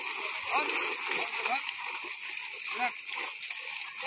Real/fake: real